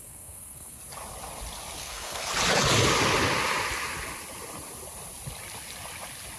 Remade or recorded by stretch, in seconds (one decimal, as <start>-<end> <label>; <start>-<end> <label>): 0.0-0.8 remade; 0.8-1.8 recorded; 1.8-2.3 remade; 2.3-6.4 recorded